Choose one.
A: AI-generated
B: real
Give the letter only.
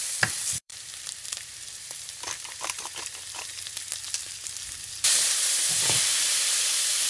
A